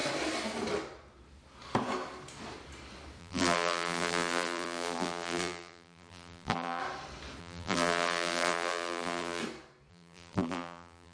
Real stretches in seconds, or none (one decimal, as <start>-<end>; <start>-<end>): 0.0-3.2; 6.8-7.4; 9.4-9.9